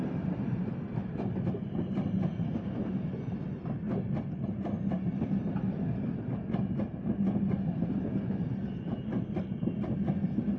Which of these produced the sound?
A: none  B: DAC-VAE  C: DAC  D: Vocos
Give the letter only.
A